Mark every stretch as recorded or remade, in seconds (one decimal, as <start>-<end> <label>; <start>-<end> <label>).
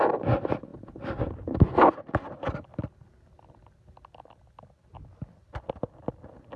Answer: 0.0-6.6 recorded